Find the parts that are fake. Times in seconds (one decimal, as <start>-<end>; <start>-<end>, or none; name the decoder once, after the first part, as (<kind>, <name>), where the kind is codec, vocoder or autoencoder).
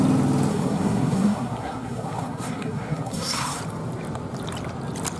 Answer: 0.5-3.6 (codec, SNAC)